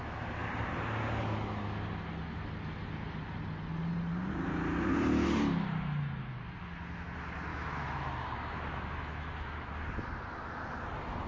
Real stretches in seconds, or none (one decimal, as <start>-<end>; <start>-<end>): 0.0-7.5; 9.7-11.3